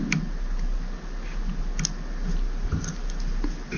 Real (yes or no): yes